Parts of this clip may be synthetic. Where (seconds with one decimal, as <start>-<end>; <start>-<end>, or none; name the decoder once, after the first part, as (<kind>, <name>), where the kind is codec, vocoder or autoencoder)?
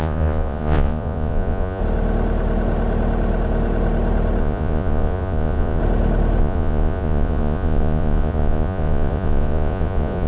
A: 0.0-1.8 (vocoder, Vocos); 4.4-5.8; 6.4-10.3